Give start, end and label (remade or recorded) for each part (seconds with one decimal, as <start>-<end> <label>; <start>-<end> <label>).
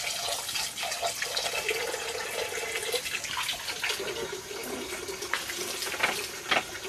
0.0-6.9 recorded